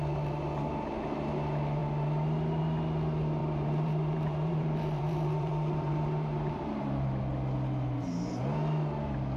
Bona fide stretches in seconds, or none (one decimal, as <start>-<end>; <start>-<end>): 0.0-3.4; 7.2-9.4